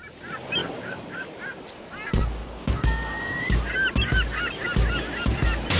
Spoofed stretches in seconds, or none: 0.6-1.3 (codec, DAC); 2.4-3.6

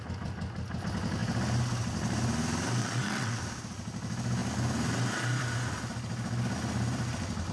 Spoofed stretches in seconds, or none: 2.8-3.4 (vocoder, WaveNeXt)

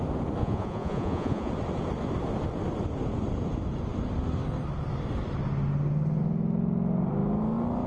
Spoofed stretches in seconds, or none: 0.4-1.5 (vocoder, Vocos)

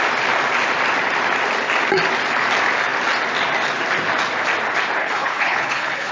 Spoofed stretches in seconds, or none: 5.0-6.1 (codec, HILCodec)

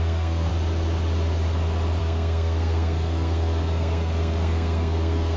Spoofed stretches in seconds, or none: 0.0-0.5 (codec, SNAC); 2.0-5.4

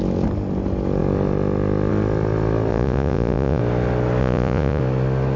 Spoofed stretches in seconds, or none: 2.7-3.6 (vocoder, Vocos); 4.2-4.8